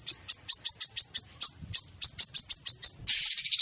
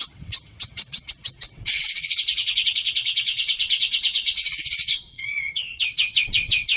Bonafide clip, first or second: first